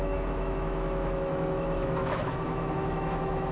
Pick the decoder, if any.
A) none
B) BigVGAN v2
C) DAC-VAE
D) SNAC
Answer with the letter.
C